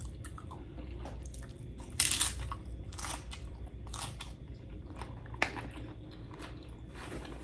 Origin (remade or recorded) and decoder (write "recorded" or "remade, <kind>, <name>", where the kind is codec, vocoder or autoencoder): recorded